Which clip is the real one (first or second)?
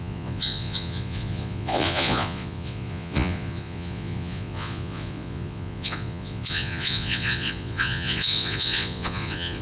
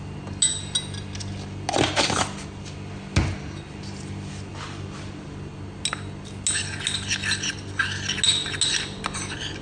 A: second